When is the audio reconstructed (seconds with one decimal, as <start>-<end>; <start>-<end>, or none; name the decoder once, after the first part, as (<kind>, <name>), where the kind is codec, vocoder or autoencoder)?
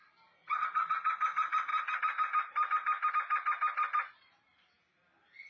0.4-0.9 (vocoder, Vocos)